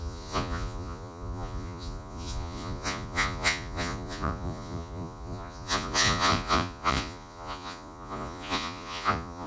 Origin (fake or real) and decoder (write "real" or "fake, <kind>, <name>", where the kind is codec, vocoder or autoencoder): fake, vocoder, Vocos